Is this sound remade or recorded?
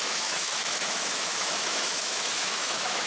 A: remade